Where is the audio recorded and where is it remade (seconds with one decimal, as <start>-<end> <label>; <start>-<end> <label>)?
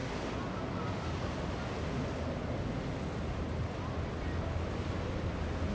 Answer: 0.0-5.7 recorded